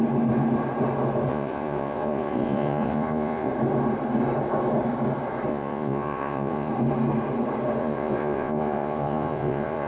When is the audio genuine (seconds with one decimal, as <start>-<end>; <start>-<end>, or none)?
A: 0.0-1.3; 3.5-5.5; 6.7-7.8